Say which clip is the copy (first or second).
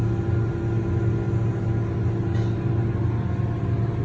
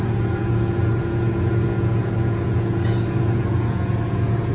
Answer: second